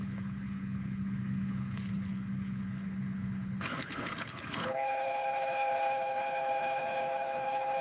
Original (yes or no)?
no